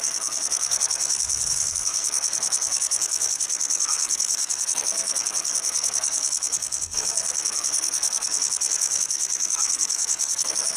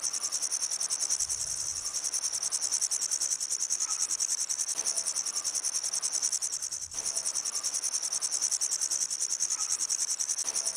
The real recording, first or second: second